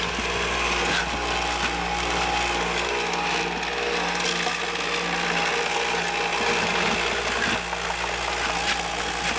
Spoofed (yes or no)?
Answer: no